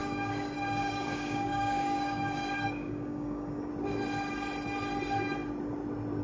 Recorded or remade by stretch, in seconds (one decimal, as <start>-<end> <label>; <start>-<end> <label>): 0.0-3.7 remade; 3.7-6.2 recorded

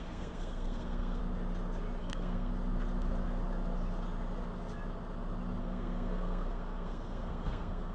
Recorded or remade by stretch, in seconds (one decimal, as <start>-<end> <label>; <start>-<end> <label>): 0.0-1.2 remade; 1.2-2.0 recorded; 2.0-2.5 remade; 2.5-5.6 recorded; 5.6-7.9 remade

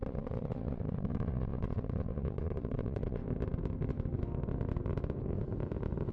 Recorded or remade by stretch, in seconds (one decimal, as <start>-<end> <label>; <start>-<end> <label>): 0.0-3.2 remade; 3.2-6.1 recorded

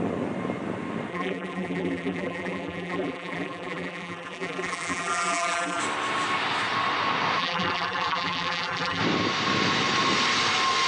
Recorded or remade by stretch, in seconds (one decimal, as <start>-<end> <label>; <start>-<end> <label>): 0.0-1.1 recorded; 1.1-5.8 remade; 5.8-7.4 recorded; 7.4-9.0 remade; 9.0-10.9 recorded

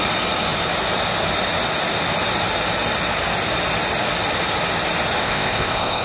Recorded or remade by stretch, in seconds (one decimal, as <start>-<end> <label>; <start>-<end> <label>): 0.0-5.2 recorded; 5.2-6.0 remade